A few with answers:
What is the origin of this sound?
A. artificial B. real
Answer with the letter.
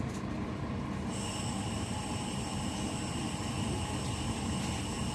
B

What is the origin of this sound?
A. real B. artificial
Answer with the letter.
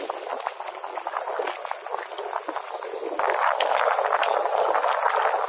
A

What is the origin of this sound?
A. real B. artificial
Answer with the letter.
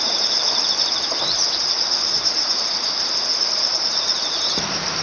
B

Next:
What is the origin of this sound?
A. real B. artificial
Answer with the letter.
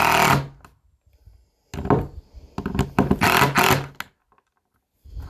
A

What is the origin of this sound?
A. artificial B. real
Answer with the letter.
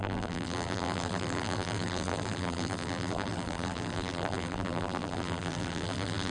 A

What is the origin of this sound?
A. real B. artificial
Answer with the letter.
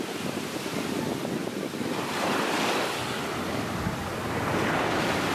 B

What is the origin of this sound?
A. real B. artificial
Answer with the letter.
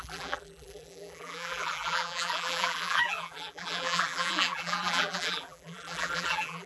B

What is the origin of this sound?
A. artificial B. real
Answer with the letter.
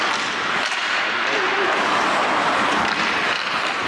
B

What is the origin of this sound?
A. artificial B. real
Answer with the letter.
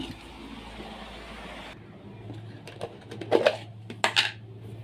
B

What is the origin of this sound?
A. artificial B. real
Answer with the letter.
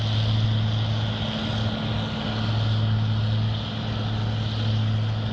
B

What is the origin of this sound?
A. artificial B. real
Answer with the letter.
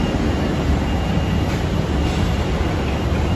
B